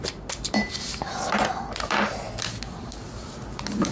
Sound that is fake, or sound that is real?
real